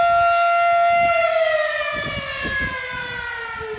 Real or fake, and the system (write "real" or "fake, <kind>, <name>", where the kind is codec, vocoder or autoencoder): fake, vocoder, BigVGAN v2